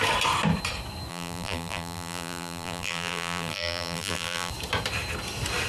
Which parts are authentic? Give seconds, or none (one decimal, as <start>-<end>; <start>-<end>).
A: 0.0-1.1; 4.5-5.7